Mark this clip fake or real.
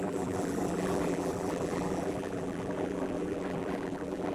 fake